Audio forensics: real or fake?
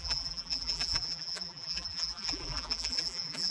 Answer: fake